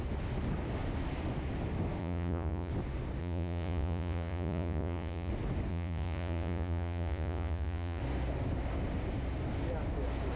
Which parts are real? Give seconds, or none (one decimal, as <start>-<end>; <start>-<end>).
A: 0.0-2.0; 2.7-3.2; 5.3-5.7; 8.0-10.4